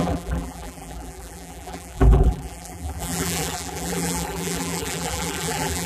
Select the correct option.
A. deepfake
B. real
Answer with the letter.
A